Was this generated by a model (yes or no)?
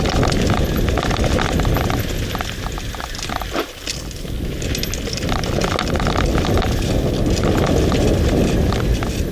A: no